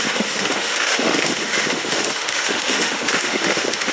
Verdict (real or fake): fake